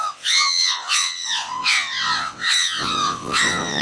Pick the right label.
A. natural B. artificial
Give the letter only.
B